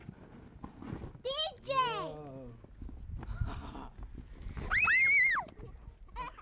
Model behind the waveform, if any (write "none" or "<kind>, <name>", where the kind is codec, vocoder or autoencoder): none